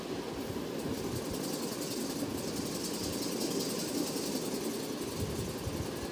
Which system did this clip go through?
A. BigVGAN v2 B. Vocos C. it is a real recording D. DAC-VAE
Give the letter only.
C